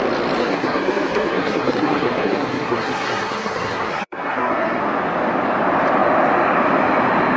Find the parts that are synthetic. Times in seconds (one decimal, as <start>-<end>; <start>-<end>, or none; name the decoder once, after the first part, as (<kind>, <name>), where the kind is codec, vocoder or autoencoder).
0.4-4.8 (codec, SNAC)